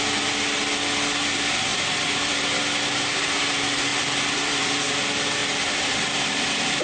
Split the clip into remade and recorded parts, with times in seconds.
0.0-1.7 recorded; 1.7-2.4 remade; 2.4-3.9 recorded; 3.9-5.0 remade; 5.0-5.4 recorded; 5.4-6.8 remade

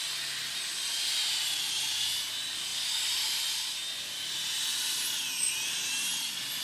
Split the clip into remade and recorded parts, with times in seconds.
0.0-2.7 recorded; 2.7-4.5 remade; 4.5-6.6 recorded

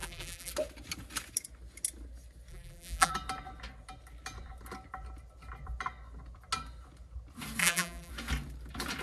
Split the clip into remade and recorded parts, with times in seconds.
0.0-0.5 remade; 0.5-2.5 recorded; 2.5-3.1 remade; 3.1-7.6 recorded; 7.6-8.1 remade; 8.1-9.0 recorded